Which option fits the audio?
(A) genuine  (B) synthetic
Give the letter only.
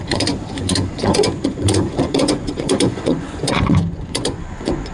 B